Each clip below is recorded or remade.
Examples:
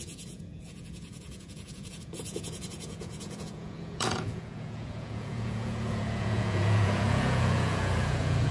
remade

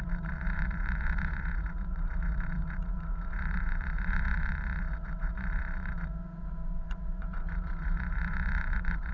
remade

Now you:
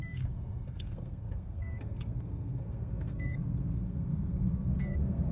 remade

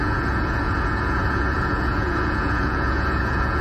remade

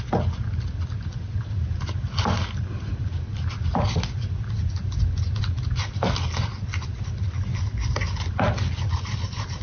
recorded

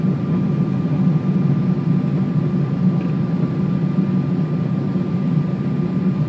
recorded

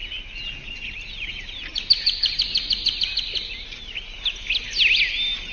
recorded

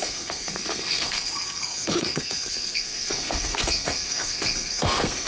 remade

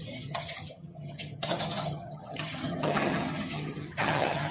remade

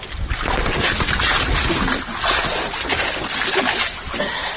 recorded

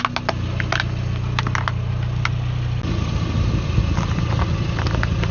recorded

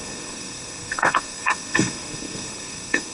remade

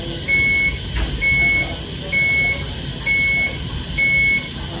recorded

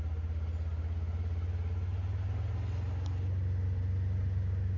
recorded